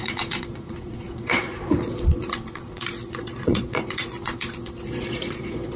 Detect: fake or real fake